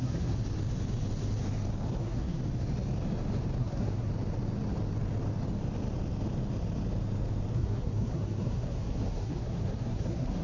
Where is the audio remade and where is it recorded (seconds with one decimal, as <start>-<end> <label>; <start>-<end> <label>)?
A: 0.0-0.4 remade; 0.4-2.0 recorded; 2.0-2.4 remade; 2.4-3.6 recorded; 3.6-4.1 remade; 4.1-7.5 recorded; 7.5-10.4 remade